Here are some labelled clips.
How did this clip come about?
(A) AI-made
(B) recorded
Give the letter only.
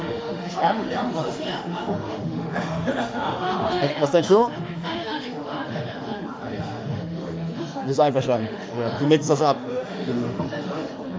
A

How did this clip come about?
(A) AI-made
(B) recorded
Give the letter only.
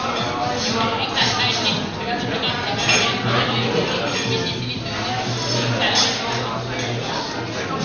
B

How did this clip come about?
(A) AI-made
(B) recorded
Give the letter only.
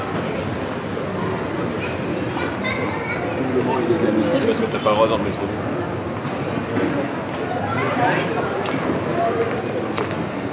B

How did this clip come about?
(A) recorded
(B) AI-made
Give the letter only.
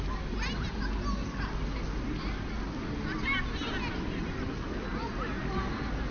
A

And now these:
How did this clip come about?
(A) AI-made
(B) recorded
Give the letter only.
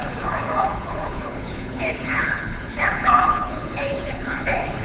A